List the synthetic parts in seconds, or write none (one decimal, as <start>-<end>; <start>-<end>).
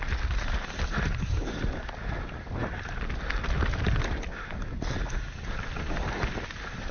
none